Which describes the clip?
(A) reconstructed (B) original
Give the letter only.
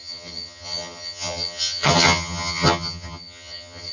A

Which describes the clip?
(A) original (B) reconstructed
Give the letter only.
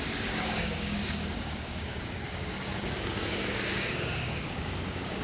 B